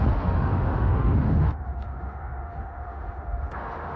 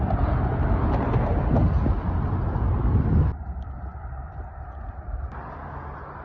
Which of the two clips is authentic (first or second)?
second